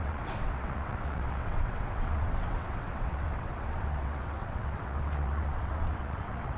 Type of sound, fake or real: fake